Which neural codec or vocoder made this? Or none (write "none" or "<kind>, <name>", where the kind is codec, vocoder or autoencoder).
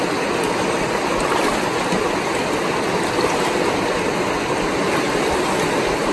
none